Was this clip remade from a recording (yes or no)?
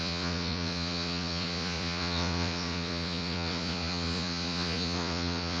yes